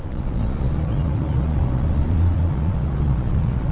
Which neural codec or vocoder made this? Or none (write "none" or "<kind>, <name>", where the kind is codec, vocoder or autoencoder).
vocoder, Vocos